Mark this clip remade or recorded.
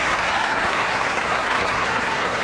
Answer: remade